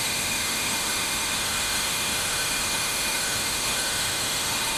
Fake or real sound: fake